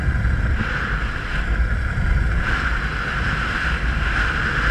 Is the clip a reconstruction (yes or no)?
no